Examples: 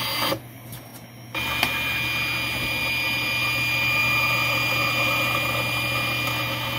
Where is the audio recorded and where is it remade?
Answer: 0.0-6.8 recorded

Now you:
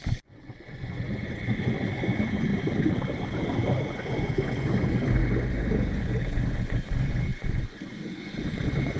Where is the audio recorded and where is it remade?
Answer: 0.0-2.5 remade; 2.5-3.8 recorded; 3.8-9.0 remade

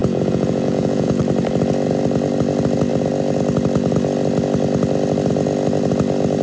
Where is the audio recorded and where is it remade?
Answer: 0.0-1.2 remade; 1.2-6.4 recorded

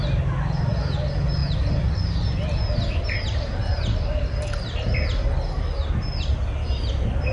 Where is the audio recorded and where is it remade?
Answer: 0.0-7.3 recorded

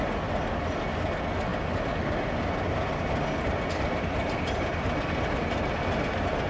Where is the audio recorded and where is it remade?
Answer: 0.0-6.5 recorded

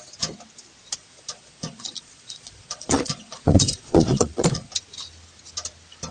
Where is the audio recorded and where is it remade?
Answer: 0.0-1.0 recorded; 1.0-4.7 remade; 4.7-6.1 recorded

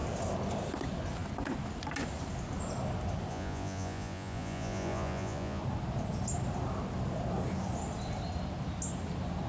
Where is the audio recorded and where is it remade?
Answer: 0.0-3.3 recorded; 3.3-5.6 remade; 5.6-9.5 recorded